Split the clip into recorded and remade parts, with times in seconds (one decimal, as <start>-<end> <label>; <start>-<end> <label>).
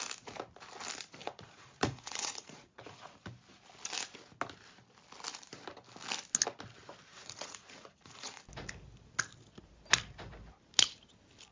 0.0-1.2 recorded; 1.2-3.1 remade; 3.1-7.1 recorded; 7.1-8.4 remade; 8.4-11.5 recorded